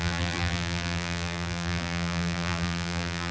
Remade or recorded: remade